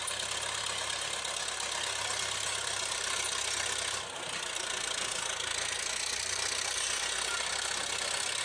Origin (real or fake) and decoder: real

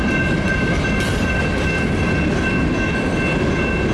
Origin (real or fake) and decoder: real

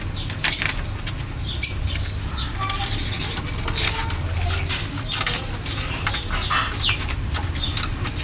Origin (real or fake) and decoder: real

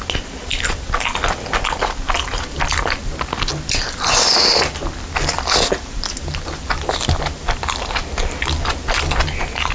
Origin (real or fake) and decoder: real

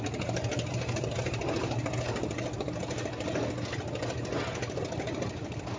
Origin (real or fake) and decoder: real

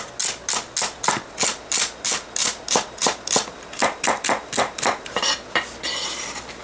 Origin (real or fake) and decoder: real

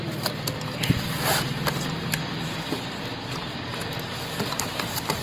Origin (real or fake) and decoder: real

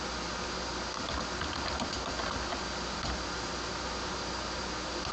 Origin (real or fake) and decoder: real